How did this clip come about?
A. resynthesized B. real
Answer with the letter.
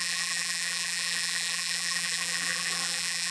A